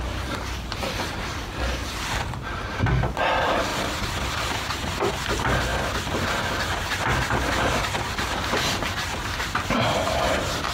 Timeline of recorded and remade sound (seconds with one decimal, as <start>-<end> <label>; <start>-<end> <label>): 0.0-3.7 recorded; 3.7-5.1 remade; 5.1-10.7 recorded